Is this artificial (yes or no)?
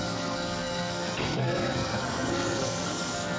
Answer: yes